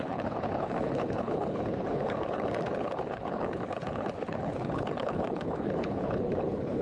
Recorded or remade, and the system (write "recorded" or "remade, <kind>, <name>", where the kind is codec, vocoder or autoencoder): remade, codec, HILCodec